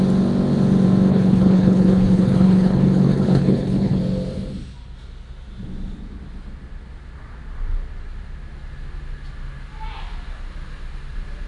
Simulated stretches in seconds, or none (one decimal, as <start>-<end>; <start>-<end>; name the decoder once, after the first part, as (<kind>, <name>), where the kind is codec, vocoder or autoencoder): 1.1-4.0 (codec, HILCodec)